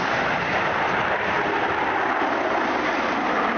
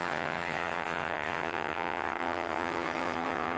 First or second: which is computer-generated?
second